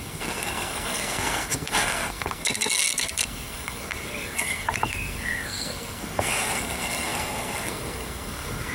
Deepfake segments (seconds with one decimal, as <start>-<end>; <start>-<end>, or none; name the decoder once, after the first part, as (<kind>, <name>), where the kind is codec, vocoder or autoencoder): 0.0-8.7 (codec, SNAC)